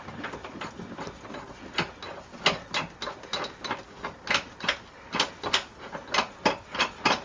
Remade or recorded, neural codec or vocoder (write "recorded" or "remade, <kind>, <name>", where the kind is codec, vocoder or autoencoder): recorded